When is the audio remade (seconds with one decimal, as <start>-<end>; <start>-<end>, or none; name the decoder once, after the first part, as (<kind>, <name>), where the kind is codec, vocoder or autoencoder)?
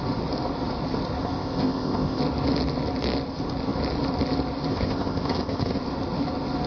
1.2-2.2 (codec, ZipCodec); 4.7-5.8